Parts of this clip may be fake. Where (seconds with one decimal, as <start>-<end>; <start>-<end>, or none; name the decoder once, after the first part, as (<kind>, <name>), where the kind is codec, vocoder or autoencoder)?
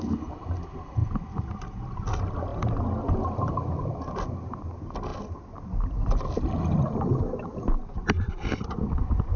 none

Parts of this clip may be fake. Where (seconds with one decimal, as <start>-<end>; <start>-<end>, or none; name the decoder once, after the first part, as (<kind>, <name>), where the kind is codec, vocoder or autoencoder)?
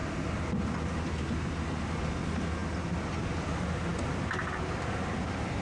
none